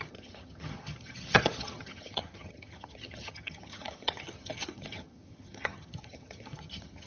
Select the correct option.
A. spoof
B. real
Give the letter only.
A